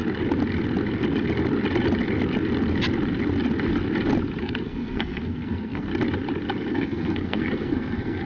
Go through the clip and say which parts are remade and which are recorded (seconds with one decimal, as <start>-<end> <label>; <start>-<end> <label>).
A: 0.0-4.4 recorded; 4.4-5.9 remade; 5.9-6.7 recorded; 6.7-8.3 remade